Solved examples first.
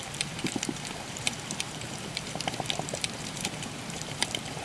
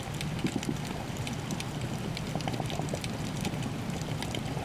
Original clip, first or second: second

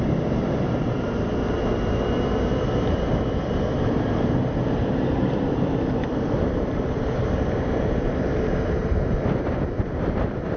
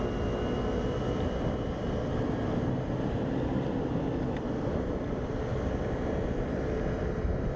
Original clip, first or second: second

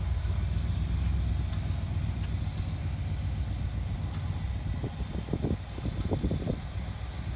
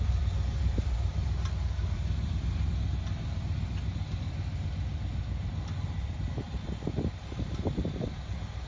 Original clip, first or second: first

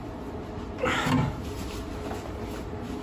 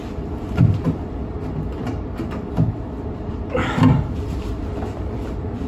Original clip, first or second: first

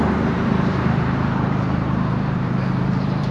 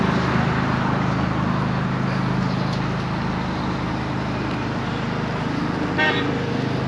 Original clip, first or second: second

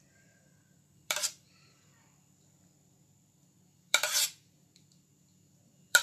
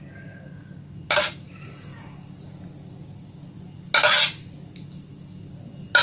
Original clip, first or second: second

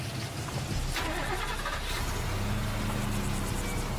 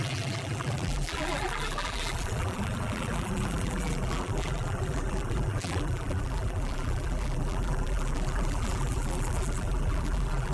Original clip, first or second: first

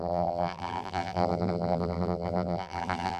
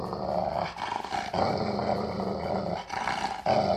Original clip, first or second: second